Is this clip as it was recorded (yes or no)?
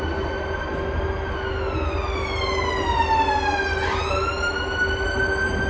yes